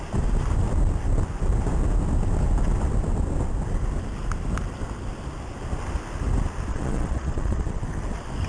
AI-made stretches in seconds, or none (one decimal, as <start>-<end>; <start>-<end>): 6.7-7.8